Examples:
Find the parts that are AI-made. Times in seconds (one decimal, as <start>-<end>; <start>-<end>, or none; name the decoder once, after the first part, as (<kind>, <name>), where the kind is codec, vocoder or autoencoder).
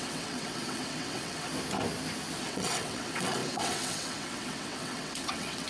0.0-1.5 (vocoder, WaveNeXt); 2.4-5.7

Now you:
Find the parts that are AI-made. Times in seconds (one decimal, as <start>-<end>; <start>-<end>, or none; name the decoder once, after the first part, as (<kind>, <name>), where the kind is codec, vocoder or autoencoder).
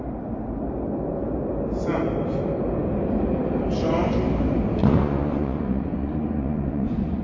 4.8-7.2 (vocoder, Vocos)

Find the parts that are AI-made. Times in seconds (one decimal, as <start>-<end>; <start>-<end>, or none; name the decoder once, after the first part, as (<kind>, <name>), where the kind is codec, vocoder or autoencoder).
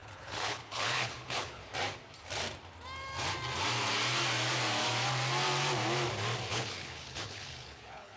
0.0-1.6 (codec, HILCodec); 6.5-8.2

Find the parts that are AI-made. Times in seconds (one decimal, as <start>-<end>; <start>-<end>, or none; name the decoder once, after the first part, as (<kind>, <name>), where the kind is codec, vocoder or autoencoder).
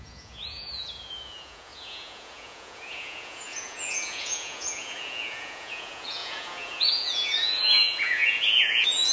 0.0-9.1 (vocoder, Vocos)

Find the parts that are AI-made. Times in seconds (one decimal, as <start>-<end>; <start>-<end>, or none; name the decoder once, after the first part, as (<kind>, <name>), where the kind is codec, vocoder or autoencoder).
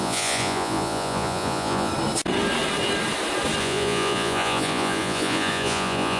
0.0-1.9 (vocoder, Vocos); 3.6-6.2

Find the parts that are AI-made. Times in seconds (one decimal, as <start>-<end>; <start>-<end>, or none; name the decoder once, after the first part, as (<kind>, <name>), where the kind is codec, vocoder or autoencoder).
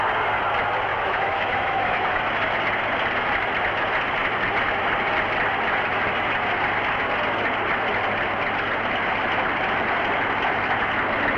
0.9-2.2 (autoencoder, DAC-VAE)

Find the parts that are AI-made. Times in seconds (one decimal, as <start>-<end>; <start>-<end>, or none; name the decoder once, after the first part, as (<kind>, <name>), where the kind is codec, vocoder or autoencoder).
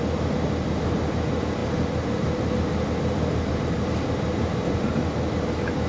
none